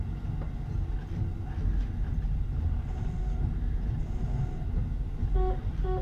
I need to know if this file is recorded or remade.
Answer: recorded